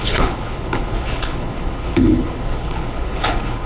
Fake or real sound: fake